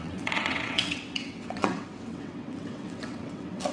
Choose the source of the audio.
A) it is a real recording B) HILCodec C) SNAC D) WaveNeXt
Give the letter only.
D